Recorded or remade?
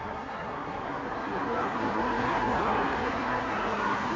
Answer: remade